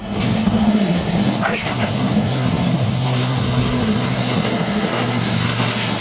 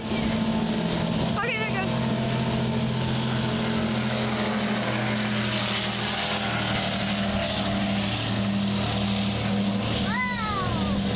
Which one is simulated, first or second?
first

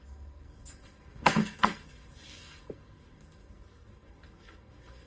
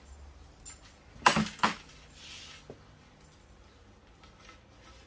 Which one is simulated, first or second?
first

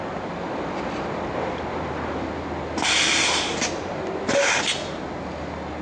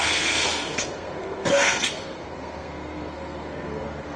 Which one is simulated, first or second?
second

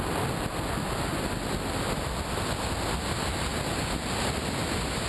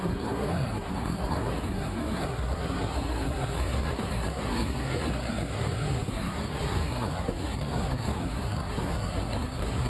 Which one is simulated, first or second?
second